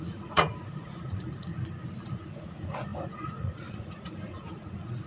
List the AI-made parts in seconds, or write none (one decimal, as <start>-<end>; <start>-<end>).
0.0-1.5; 2.1-5.1